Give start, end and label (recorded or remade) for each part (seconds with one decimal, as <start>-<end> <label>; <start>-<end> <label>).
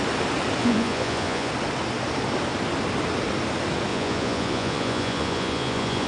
0.0-0.6 recorded; 0.6-1.5 remade; 1.5-3.9 recorded; 3.9-6.1 remade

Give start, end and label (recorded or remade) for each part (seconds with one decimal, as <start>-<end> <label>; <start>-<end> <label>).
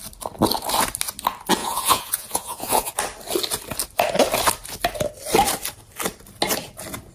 0.0-1.6 recorded; 1.6-2.9 remade; 2.9-7.1 recorded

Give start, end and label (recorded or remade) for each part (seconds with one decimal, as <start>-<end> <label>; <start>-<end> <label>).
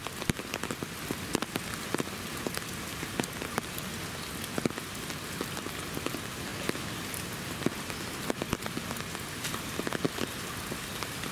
0.0-11.3 recorded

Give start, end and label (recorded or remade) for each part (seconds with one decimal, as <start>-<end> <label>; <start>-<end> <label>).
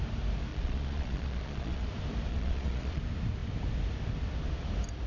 0.0-0.5 recorded; 0.5-1.9 remade; 1.9-2.3 recorded; 2.3-3.0 remade; 3.0-5.1 recorded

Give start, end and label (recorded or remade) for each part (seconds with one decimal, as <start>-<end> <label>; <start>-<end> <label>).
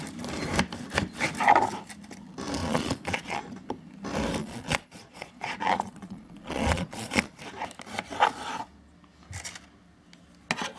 0.0-2.6 recorded; 2.6-3.4 remade; 3.4-4.4 recorded; 4.4-7.4 remade; 7.4-10.8 recorded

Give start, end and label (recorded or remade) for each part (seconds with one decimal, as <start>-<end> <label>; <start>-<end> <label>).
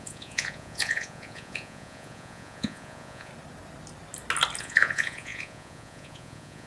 0.0-3.3 remade; 3.3-4.6 recorded; 4.6-6.7 remade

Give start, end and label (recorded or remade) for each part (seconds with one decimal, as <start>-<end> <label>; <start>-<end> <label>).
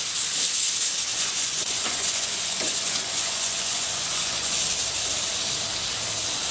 0.0-1.1 recorded; 1.1-4.6 remade; 4.6-6.5 recorded